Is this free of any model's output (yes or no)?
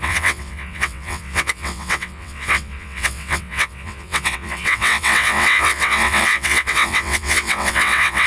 no